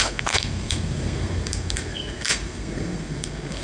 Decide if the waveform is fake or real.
fake